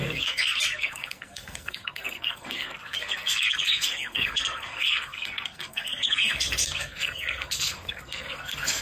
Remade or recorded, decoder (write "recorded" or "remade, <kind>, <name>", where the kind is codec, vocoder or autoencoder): remade, codec, SNAC